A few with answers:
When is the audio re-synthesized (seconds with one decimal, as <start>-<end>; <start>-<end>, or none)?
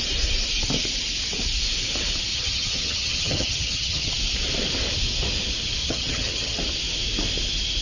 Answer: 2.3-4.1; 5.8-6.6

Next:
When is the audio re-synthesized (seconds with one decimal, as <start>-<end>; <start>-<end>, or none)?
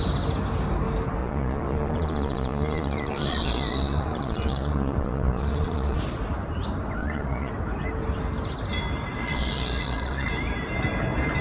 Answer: 1.2-6.0; 7.0-7.5; 9.2-10.3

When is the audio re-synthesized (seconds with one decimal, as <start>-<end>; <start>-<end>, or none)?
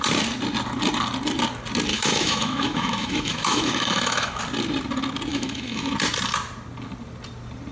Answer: 1.9-4.4; 5.3-5.9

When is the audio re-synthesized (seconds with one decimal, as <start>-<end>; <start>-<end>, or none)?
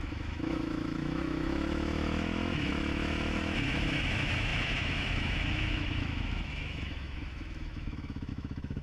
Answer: 0.0-8.8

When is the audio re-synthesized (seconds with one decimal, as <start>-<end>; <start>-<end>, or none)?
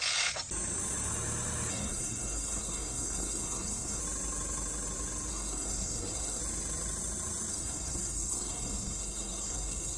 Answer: 1.7-4.0; 5.3-6.4; 7.5-10.0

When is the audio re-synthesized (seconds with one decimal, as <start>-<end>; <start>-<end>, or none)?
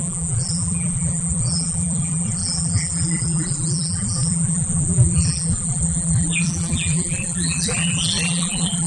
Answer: 0.0-8.9